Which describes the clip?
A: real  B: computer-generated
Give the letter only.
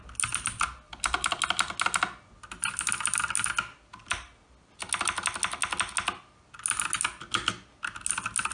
A